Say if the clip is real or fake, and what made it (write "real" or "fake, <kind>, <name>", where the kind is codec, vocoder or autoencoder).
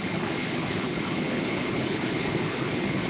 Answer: fake, codec, HILCodec